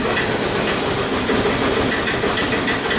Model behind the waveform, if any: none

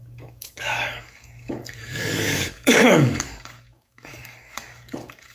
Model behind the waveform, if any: codec, DAC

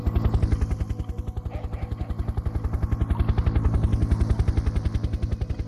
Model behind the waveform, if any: none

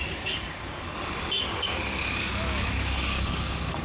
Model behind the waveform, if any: codec, DAC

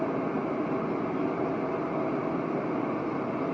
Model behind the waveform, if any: none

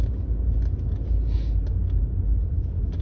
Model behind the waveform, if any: none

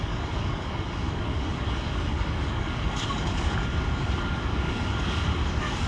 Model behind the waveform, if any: codec, DAC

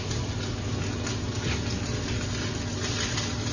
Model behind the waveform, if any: none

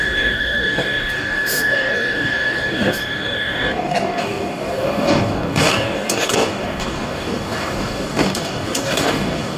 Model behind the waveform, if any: codec, DAC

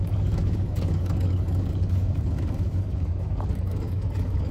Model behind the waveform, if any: codec, DAC